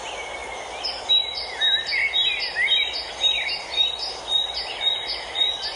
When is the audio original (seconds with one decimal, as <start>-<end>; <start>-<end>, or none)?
0.0-5.8